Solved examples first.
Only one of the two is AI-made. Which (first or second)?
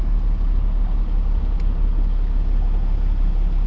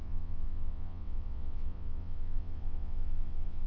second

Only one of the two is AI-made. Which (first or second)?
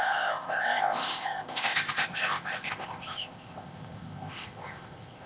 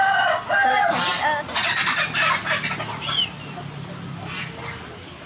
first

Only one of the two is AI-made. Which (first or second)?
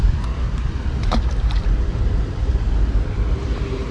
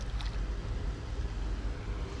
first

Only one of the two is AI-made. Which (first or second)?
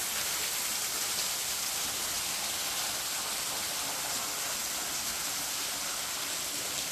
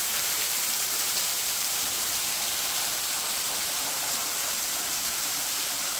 second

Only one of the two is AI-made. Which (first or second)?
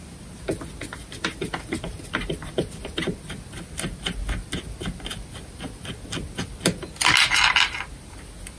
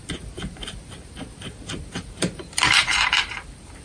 second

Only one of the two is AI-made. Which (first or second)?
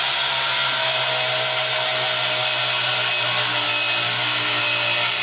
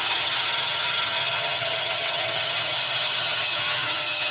second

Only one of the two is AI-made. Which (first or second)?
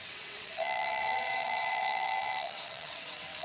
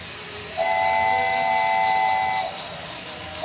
first